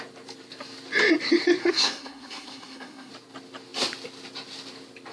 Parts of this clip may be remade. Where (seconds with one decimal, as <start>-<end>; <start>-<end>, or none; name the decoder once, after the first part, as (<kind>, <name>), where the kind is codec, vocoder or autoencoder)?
1.6-3.1 (codec, SNAC)